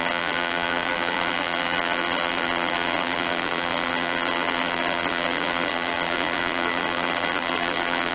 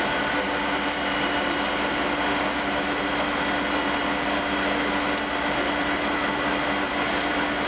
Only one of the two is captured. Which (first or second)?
second